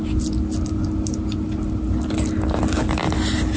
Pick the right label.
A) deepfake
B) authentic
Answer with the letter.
B